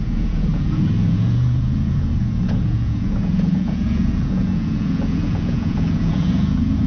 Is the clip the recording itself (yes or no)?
no